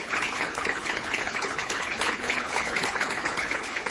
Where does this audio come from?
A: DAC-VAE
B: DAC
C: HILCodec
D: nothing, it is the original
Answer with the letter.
C